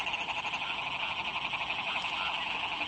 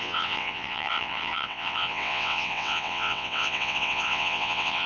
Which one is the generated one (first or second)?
second